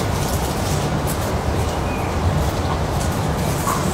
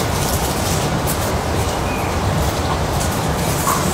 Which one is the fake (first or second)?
second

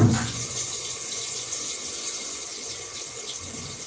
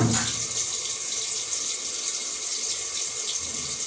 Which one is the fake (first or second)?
first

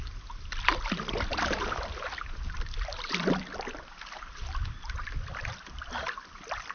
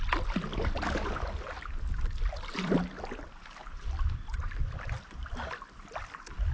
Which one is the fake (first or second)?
first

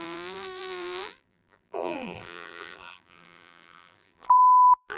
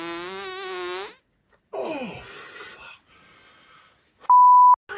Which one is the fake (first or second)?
first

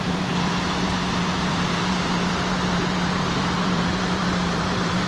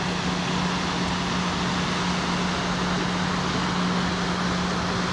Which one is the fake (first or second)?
first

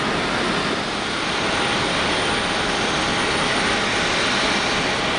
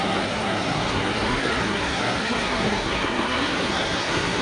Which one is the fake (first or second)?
second